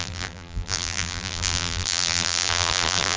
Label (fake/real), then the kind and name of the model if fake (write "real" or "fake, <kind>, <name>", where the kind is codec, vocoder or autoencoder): fake, vocoder, BigVGAN v2